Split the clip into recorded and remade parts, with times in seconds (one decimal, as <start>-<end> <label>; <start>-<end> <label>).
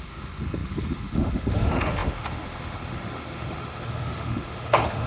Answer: 0.0-5.1 remade